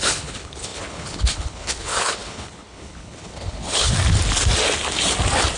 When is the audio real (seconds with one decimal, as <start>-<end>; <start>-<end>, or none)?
3.9-5.6